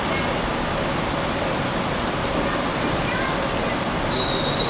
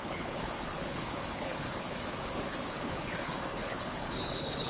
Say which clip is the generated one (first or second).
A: second